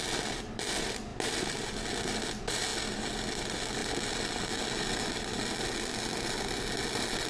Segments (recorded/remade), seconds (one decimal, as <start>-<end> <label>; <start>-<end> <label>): 0.0-7.3 recorded